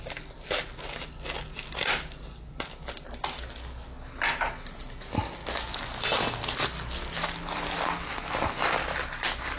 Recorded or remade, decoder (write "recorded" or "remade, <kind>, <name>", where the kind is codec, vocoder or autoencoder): recorded